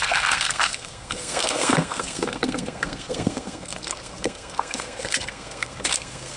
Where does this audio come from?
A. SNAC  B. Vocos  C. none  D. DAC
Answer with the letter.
A